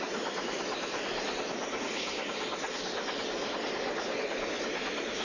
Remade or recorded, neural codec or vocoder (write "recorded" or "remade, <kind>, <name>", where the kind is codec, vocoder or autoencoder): recorded